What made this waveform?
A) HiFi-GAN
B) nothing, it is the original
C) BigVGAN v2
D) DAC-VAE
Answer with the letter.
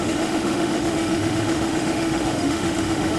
D